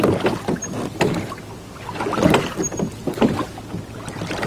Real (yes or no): yes